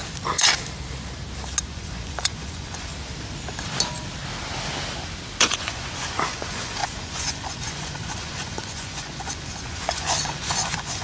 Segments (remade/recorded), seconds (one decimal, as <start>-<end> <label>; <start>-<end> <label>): 0.0-1.7 recorded; 1.7-2.9 remade; 2.9-5.4 recorded; 5.4-11.0 remade